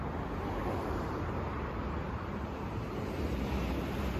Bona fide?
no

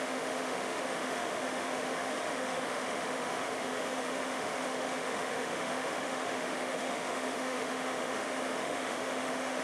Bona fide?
no